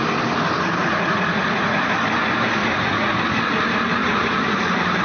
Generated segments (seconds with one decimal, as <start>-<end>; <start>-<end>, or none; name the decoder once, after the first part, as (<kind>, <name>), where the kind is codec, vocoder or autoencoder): 0.8-1.9 (vocoder, Vocos); 2.6-3.2; 4.0-4.6